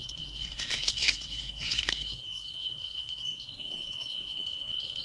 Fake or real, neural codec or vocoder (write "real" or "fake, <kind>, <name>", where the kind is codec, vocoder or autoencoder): fake, codec, SNAC